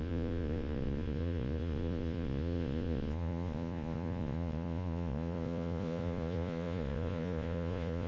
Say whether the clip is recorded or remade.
remade